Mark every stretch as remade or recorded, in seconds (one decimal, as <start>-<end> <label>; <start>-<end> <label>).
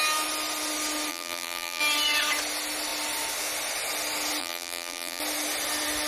0.0-1.1 recorded; 1.1-1.8 remade; 1.8-4.4 recorded; 4.4-5.2 remade; 5.2-6.1 recorded